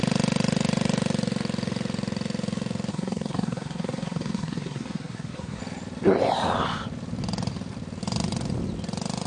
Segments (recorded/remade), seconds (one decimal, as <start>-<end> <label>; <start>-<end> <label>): 0.0-2.9 recorded; 2.9-5.6 remade; 5.6-9.3 recorded